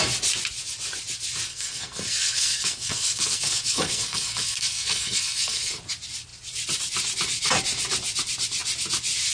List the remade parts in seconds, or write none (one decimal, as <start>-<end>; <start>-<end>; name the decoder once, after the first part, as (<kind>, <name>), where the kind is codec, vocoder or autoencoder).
1.5-5.7 (codec, SNAC)